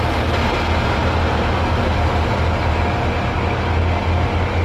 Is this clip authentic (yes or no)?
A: yes